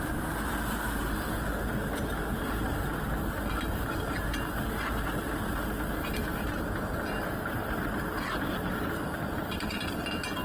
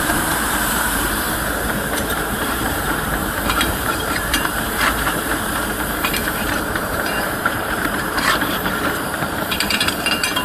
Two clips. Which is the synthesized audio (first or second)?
second